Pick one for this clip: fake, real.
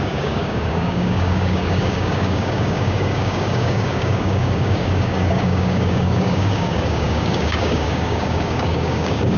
fake